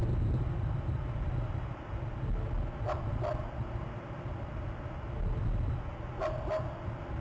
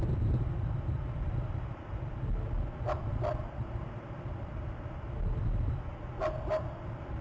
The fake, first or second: second